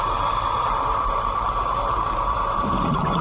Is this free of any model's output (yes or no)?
no